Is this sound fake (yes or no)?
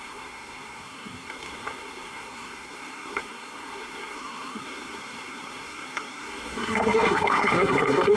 yes